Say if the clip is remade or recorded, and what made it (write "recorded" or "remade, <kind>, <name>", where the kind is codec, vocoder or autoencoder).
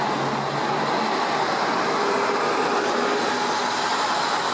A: recorded